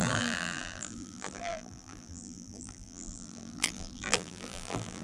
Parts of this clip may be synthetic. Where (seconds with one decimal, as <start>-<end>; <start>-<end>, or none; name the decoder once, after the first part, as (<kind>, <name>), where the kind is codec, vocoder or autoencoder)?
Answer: 0.0-5.0 (vocoder, BigVGAN v2)